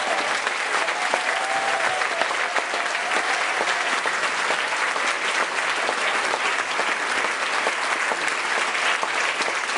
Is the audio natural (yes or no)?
yes